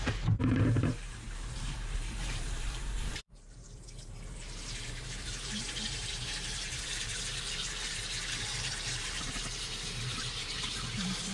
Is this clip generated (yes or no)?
yes